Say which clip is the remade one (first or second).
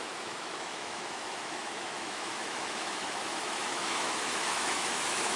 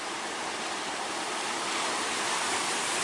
first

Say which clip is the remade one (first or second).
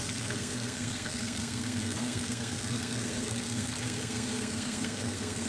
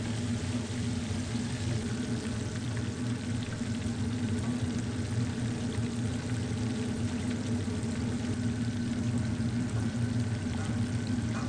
first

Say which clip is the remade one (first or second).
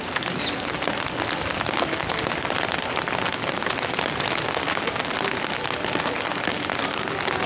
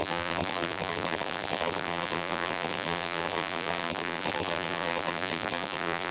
second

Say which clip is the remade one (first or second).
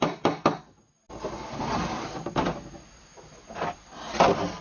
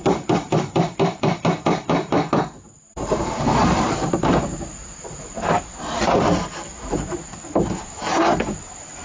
second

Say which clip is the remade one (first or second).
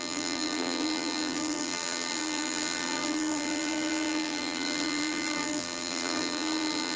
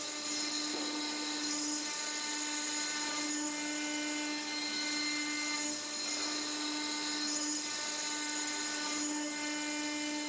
first